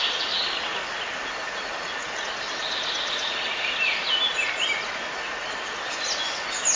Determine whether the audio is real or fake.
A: real